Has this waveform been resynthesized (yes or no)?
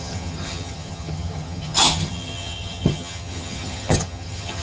yes